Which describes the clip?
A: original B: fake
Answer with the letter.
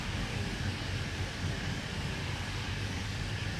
B